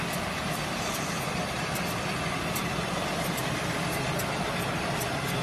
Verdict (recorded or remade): recorded